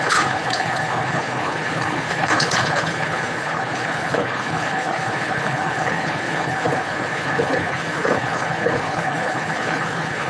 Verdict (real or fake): fake